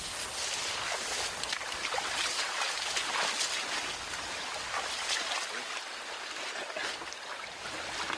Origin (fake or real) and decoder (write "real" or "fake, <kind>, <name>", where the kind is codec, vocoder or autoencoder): real